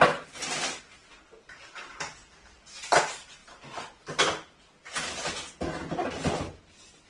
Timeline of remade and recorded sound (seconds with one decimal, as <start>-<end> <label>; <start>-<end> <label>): 0.0-1.0 recorded; 1.0-3.0 remade; 3.0-7.1 recorded